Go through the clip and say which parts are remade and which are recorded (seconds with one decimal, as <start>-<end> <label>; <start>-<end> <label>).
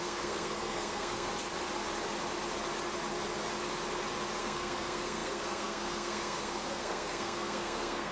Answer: 0.0-1.3 remade; 1.3-4.4 recorded; 4.4-8.1 remade